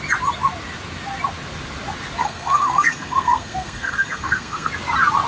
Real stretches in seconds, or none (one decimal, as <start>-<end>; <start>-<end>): 0.0-2.2; 4.7-5.3